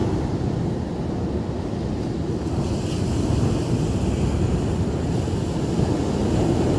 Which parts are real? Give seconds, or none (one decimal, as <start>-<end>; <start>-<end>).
4.1-6.8